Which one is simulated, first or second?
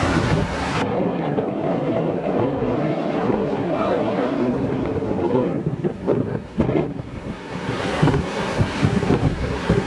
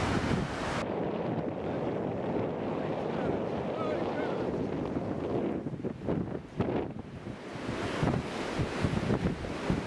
first